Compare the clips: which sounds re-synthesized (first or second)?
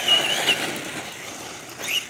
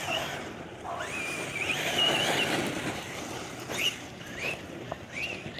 second